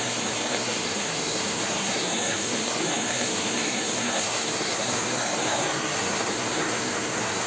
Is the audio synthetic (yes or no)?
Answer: yes